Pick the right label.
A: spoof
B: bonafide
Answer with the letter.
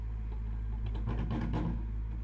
B